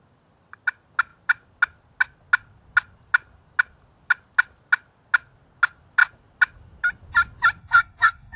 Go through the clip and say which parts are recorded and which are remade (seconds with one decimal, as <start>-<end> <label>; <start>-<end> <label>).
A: 0.0-7.6 recorded; 7.6-8.4 remade